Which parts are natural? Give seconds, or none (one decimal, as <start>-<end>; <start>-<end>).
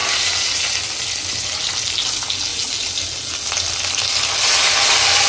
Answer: 0.0-5.3